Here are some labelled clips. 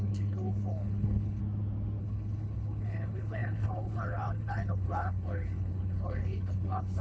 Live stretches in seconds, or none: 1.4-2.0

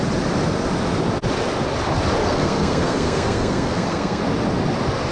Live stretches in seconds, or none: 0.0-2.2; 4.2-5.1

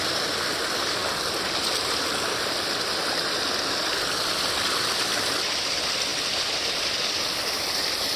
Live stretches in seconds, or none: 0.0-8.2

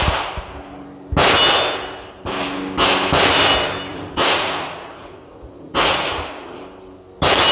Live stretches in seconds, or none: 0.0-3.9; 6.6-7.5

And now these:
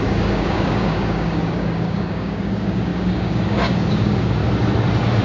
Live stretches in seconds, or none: 4.4-5.2

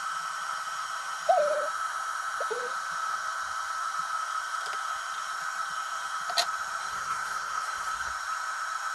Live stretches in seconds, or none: 0.0-6.8; 8.1-8.9

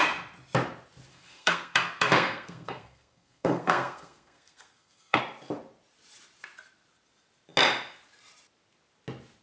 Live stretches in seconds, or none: 0.0-1.1; 5.2-9.4

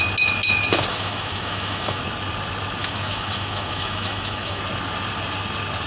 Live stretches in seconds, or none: 0.0-0.9; 2.0-2.8; 4.6-5.9